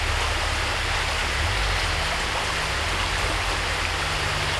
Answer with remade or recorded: recorded